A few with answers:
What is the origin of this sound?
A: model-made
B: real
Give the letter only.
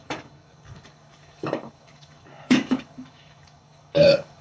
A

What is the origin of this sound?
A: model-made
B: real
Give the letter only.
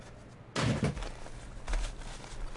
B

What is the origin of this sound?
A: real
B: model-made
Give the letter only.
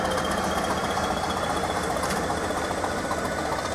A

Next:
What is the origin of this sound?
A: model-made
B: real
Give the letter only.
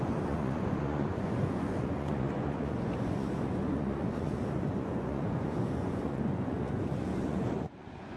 A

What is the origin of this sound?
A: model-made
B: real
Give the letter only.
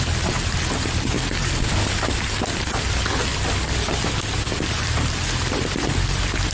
B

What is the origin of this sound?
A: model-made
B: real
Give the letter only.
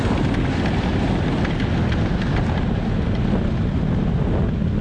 B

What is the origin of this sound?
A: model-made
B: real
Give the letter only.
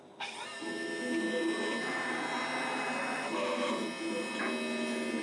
B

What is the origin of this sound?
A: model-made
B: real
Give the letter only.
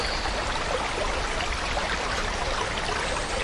B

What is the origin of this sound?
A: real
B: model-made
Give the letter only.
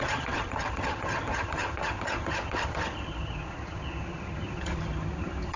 B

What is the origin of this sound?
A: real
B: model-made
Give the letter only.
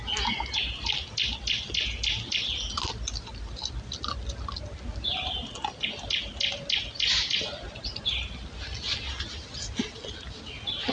A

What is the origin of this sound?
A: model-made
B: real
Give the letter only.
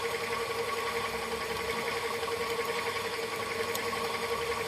B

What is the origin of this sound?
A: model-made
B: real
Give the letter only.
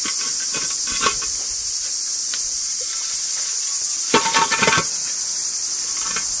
B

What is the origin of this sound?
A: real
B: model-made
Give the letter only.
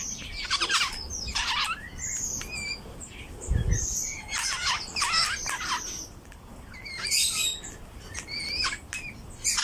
A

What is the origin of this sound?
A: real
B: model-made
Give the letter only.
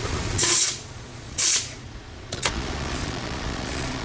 B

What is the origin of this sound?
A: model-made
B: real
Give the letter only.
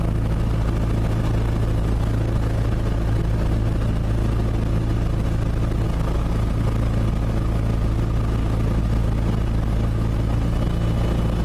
B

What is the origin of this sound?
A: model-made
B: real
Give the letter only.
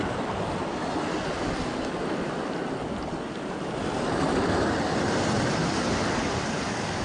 B